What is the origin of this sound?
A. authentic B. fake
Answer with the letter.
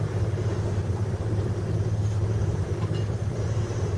B